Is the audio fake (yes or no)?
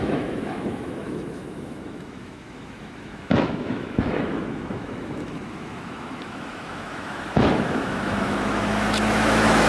yes